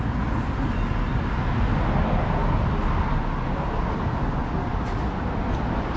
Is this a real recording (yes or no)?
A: yes